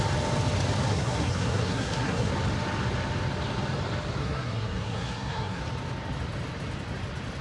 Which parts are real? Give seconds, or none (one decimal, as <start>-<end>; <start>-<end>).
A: 0.0-0.9; 2.3-4.2; 5.6-7.4